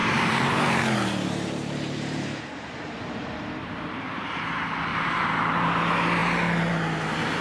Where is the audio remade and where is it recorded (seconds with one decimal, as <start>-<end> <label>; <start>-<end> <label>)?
0.0-4.4 remade; 4.4-4.9 recorded; 4.9-5.7 remade; 5.7-7.4 recorded